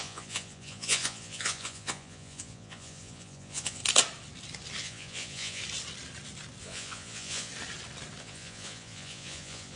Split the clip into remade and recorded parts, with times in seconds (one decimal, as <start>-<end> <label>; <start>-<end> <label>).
0.0-3.8 remade; 3.8-4.8 recorded; 4.8-5.6 remade; 5.6-6.6 recorded; 6.6-7.5 remade; 7.5-8.2 recorded; 8.2-9.8 remade